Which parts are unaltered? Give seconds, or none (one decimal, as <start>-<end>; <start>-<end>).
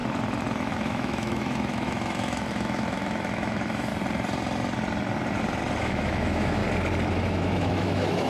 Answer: 0.0-0.6; 3.9-5.8; 6.6-7.1